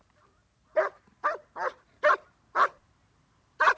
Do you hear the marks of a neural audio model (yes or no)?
no